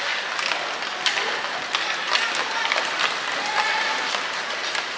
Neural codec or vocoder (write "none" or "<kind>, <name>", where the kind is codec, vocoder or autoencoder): none